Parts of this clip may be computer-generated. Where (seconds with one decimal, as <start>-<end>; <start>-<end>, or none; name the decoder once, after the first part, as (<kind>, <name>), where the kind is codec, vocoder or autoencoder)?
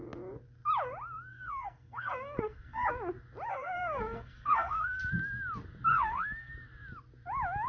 1.3-2.9 (codec, SNAC); 3.5-5.0; 5.9-6.5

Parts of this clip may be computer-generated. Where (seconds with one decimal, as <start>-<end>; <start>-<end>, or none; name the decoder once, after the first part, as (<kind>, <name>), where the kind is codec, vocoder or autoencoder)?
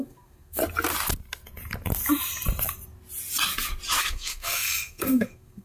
0.0-0.6 (codec, SNAC); 4.0-5.6